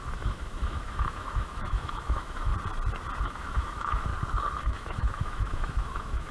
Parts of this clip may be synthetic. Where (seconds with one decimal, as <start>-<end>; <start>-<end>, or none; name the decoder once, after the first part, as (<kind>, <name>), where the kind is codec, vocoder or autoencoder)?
0.0-2.5 (autoencoder, DAC-VAE); 3.2-4.1; 4.6-6.3